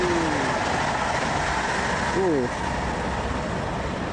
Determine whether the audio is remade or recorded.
recorded